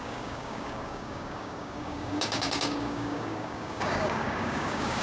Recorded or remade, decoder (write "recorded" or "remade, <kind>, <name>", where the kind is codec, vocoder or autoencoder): remade, codec, DAC